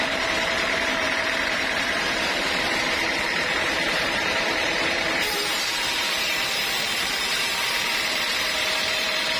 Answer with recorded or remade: remade